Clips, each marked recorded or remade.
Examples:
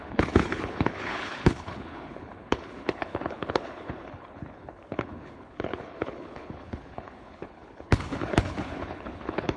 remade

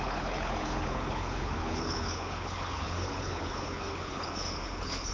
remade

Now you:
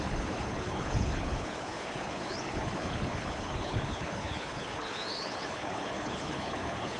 remade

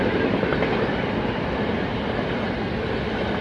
recorded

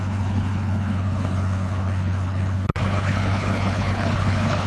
remade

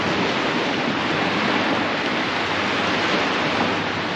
recorded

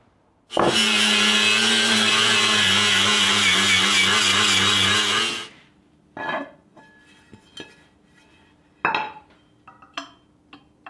recorded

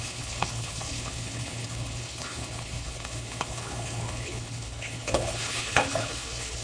remade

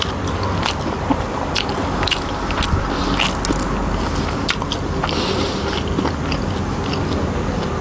recorded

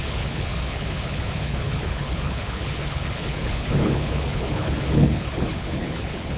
remade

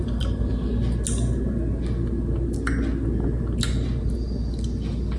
recorded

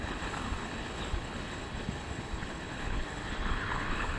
remade